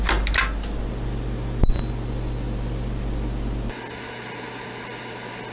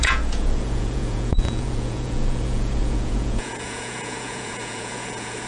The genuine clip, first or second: first